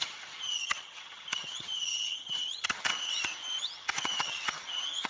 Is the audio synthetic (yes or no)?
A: yes